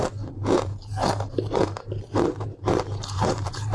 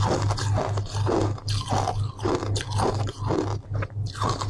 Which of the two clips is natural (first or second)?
second